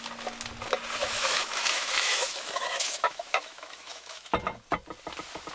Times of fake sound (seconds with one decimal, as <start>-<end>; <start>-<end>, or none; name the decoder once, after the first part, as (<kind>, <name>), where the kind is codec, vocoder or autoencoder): 1.0-4.3 (autoencoder, DAC-VAE)